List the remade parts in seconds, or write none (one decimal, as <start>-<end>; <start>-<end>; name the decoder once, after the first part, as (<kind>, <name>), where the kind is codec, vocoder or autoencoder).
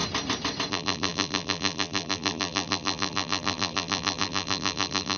0.7-5.2 (vocoder, BigVGAN v2)